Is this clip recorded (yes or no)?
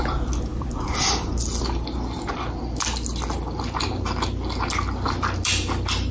yes